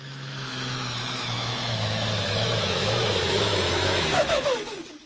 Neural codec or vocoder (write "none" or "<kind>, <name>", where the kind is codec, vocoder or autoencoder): autoencoder, DAC-VAE